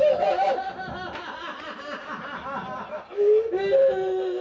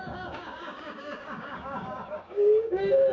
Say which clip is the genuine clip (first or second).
first